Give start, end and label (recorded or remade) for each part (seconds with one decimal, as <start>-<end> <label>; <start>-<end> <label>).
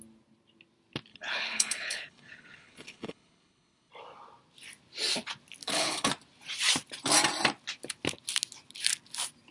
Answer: 0.0-1.1 recorded; 1.1-3.9 remade; 3.9-5.6 recorded; 5.6-6.1 remade; 6.1-9.5 recorded